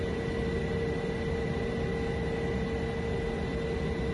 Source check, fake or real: real